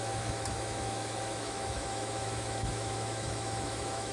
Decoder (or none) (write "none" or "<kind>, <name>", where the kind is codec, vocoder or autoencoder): autoencoder, DAC-VAE